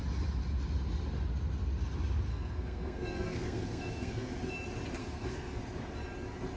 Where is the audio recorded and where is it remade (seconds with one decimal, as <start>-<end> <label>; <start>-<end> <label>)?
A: 0.0-2.3 recorded; 2.3-4.3 remade; 4.3-5.0 recorded; 5.0-5.6 remade; 5.6-6.6 recorded